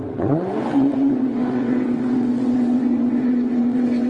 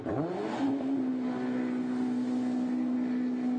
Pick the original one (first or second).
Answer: second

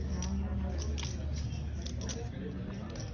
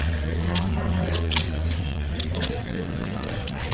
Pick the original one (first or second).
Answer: first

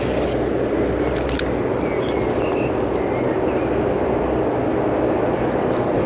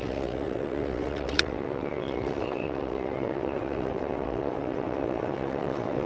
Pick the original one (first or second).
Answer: first